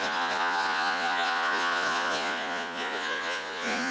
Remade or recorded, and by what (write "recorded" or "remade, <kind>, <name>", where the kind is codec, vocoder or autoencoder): remade, vocoder, Vocos